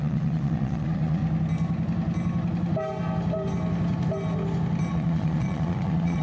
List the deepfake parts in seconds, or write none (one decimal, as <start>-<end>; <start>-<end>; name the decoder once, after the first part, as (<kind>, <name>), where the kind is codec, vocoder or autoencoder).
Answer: 0.0-1.2 (vocoder, Vocos); 4.9-6.2